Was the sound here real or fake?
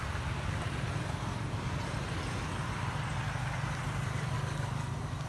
real